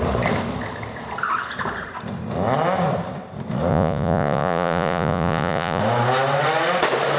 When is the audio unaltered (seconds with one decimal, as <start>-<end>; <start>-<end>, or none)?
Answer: 0.0-3.7; 5.8-7.2

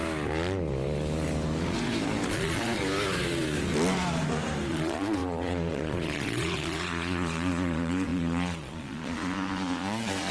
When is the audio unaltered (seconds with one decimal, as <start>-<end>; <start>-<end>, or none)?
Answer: 0.0-2.3; 2.8-4.7

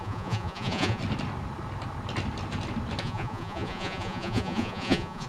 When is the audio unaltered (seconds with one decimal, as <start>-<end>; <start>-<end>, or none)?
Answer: 1.0-3.0

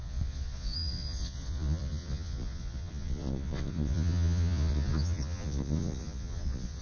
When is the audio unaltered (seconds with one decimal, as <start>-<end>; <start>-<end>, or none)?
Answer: none

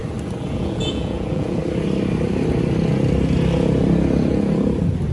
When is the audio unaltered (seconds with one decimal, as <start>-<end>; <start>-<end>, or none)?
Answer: 0.0-0.6; 1.6-5.1

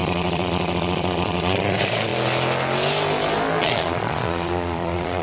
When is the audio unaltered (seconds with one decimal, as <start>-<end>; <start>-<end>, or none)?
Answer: 2.1-3.6

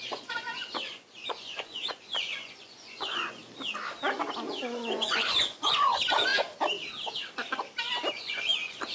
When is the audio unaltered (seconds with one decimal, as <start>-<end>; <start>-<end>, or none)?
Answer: 3.4-4.5; 6.3-8.1

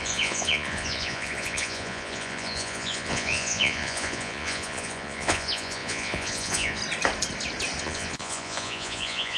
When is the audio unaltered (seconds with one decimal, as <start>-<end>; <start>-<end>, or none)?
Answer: 6.8-7.8